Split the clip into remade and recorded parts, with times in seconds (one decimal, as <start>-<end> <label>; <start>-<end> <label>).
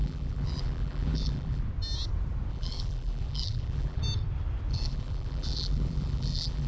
0.0-1.6 remade; 1.6-2.5 recorded; 2.5-4.0 remade; 4.0-4.7 recorded; 4.7-6.7 remade